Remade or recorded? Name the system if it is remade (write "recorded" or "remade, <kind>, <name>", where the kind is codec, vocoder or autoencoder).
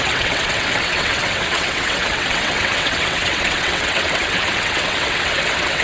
remade, vocoder, WaveNeXt